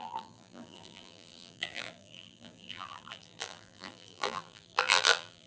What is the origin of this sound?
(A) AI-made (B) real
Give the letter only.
A